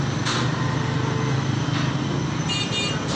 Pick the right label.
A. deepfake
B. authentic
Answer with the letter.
B